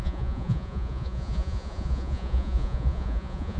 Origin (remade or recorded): remade